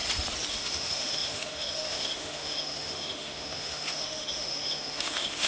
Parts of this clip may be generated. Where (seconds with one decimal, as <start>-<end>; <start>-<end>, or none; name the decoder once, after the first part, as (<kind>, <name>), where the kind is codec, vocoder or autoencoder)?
0.5-5.5 (autoencoder, DAC-VAE)